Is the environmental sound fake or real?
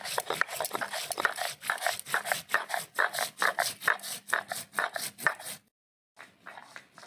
real